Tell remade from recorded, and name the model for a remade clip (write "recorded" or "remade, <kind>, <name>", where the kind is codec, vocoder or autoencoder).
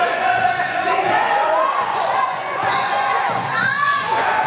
remade, vocoder, Vocos